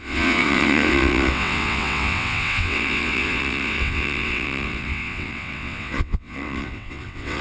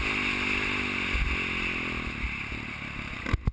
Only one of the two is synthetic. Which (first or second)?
first